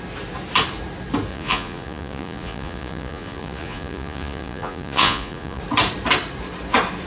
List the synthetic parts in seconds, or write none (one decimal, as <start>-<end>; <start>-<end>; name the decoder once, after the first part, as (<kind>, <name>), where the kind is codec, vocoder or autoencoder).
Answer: 1.3-5.6 (vocoder, Vocos)